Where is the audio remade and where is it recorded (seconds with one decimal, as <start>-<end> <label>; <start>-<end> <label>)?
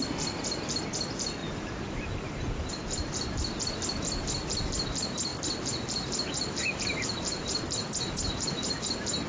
0.0-1.4 recorded; 1.4-2.7 remade; 2.7-5.3 recorded; 5.3-8.8 remade; 8.8-9.3 recorded